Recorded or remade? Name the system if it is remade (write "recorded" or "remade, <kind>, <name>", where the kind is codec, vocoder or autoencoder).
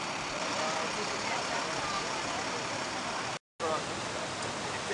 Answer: recorded